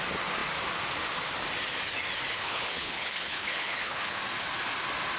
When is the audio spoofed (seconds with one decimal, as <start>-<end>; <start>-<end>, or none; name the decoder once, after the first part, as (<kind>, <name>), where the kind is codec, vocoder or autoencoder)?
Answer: 2.3-4.2 (codec, HILCodec)